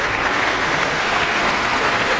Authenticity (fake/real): fake